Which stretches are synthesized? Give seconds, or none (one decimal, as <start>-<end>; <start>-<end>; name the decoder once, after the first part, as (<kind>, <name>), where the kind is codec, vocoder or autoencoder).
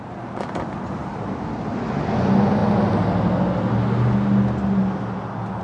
1.0-1.5 (vocoder, BigVGAN v2)